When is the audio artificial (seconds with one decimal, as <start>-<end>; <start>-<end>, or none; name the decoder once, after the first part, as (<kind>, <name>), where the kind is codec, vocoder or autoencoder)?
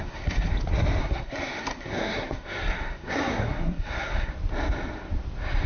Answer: 0.0-0.5 (codec, SNAC); 1.0-4.3